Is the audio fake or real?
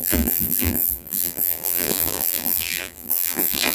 fake